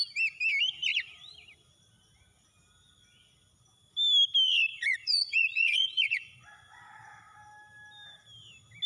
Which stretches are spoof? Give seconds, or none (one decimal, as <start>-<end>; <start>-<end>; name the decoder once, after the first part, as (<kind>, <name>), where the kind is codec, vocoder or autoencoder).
4.7-6.8 (vocoder, Vocos)